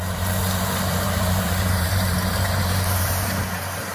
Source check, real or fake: fake